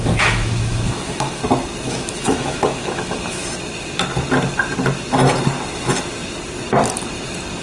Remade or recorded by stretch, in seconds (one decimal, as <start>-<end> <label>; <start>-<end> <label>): 0.0-1.4 remade; 1.4-1.9 recorded; 1.9-3.4 remade; 3.4-7.6 recorded